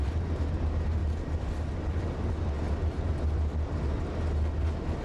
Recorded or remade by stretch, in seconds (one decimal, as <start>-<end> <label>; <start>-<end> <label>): 0.0-5.0 recorded